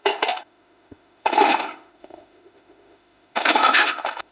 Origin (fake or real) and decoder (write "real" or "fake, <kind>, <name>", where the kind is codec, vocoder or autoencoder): fake, autoencoder, DAC-VAE